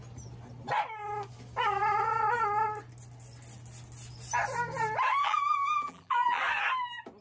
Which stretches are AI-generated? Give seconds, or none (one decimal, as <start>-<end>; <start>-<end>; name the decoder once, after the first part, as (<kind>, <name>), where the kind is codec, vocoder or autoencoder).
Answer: 5.2-6.4 (vocoder, BigVGAN v2)